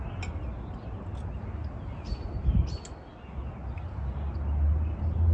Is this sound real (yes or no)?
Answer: yes